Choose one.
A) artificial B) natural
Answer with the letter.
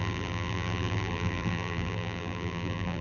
A